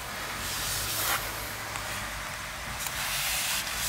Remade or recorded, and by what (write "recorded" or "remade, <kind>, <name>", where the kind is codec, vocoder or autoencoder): recorded